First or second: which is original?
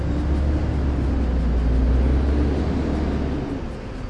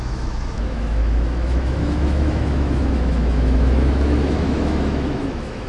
first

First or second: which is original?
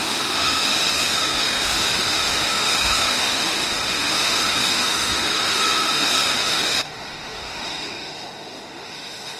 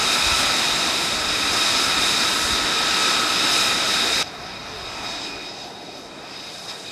second